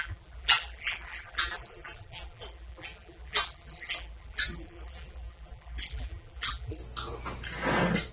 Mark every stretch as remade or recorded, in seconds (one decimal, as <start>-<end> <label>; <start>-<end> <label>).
0.0-6.8 remade; 6.8-8.1 recorded